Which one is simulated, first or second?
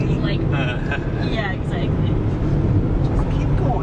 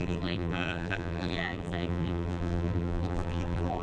second